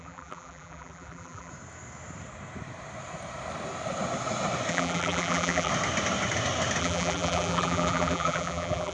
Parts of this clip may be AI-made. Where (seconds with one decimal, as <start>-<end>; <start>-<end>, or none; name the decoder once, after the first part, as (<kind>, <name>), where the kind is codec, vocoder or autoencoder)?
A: 0.0-1.5 (vocoder, BigVGAN v2); 4.7-5.7; 6.8-8.9